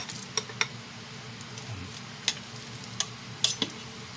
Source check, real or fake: real